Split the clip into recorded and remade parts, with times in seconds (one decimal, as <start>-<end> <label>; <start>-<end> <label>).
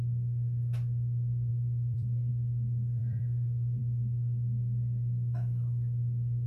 0.0-1.5 recorded; 1.5-2.3 remade; 2.3-3.0 recorded; 3.0-3.8 remade; 3.8-6.5 recorded